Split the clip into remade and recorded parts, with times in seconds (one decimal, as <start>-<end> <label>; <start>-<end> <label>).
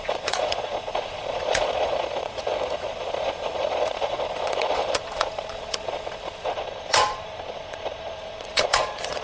0.0-9.2 remade